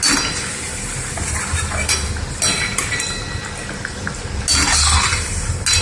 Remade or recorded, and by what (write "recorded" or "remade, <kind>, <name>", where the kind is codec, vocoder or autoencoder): recorded